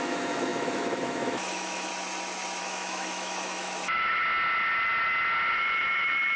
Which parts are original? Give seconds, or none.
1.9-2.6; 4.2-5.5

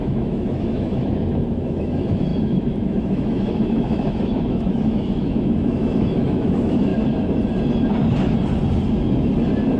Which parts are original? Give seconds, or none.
6.9-9.8

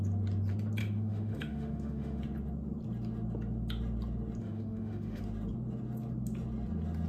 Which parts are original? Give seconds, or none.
0.0-0.8; 2.2-4.4; 5.2-7.1

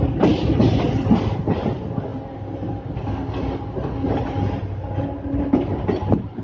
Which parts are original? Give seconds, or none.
0.0-6.4

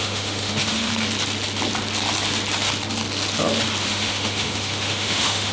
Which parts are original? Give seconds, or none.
0.9-3.8